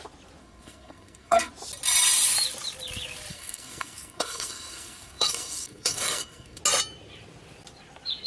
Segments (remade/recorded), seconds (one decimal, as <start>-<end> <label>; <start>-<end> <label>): 0.0-0.4 recorded; 0.4-1.5 remade; 1.5-3.3 recorded; 3.3-6.6 remade; 6.6-8.3 recorded